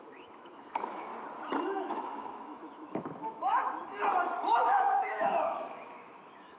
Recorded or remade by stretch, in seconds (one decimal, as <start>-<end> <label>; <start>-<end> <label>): 0.0-1.1 remade; 1.1-1.6 recorded; 1.6-3.8 remade; 3.8-4.6 recorded; 4.6-6.6 remade